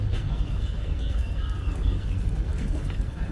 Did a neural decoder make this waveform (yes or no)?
yes